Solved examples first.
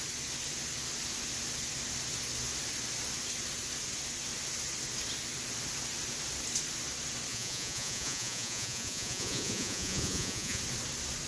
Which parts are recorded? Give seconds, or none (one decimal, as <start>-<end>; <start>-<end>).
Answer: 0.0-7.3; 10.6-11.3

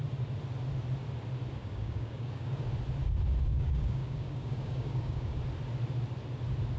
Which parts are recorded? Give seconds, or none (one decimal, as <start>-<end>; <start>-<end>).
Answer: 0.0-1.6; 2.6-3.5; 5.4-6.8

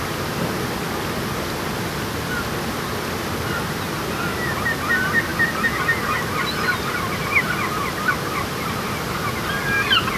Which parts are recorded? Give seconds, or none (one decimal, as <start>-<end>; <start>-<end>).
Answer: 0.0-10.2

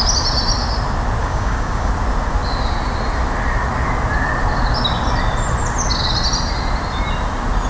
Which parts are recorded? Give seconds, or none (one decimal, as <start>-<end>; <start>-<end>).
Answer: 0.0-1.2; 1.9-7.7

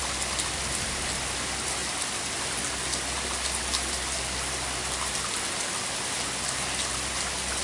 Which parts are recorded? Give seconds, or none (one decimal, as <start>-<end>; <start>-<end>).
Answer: 0.0-7.6

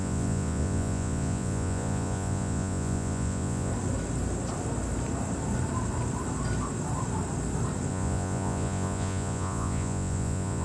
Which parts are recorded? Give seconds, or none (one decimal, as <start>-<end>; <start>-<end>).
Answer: 3.7-7.9